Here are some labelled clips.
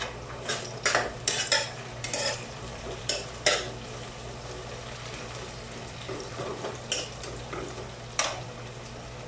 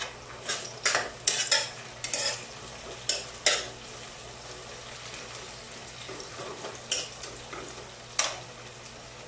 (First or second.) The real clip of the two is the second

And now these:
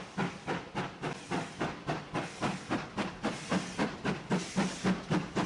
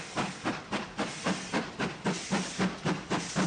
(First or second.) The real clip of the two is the first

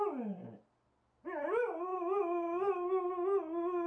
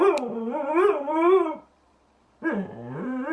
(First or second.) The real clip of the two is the first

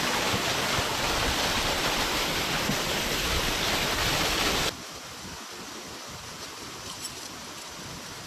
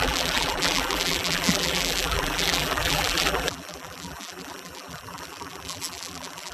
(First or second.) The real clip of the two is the first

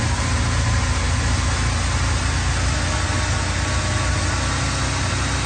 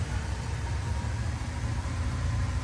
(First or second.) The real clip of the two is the first